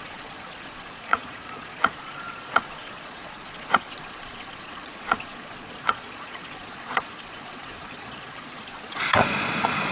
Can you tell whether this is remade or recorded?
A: remade